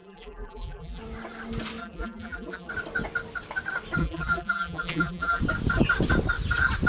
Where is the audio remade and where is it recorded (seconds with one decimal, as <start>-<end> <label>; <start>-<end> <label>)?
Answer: 0.0-1.0 remade; 1.0-1.8 recorded; 1.8-2.7 remade; 2.7-4.0 recorded; 4.0-5.4 remade; 5.4-6.9 recorded